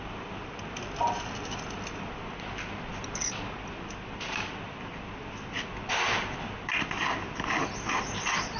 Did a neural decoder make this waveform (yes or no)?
no